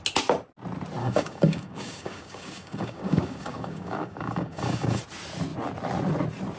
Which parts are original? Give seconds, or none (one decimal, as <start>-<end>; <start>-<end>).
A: 0.0-1.0; 5.0-6.6

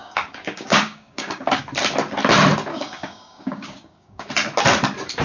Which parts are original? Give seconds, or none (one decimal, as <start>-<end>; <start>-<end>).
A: 1.6-2.7; 4.3-5.2

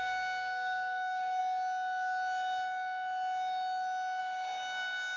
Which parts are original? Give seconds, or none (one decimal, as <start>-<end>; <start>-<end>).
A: 1.4-4.2